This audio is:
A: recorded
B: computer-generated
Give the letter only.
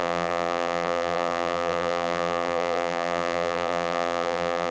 B